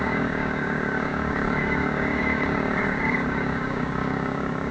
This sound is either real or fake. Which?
fake